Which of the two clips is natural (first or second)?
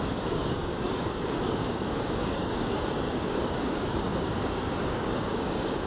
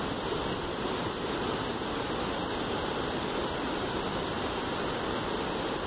second